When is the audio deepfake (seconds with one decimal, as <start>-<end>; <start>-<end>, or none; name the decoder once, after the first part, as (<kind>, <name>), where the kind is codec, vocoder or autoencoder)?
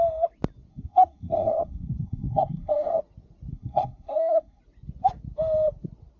0.7-3.0 (codec, SNAC); 3.5-4.6